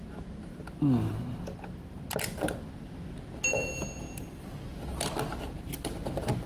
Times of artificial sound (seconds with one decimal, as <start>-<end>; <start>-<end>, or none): none